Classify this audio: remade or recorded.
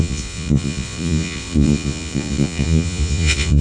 remade